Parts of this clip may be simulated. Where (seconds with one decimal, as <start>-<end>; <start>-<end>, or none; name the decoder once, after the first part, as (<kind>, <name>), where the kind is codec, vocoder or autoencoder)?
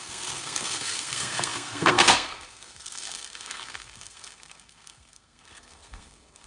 0.0-6.5 (codec, SNAC)